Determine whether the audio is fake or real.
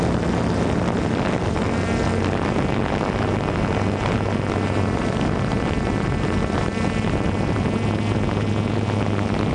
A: real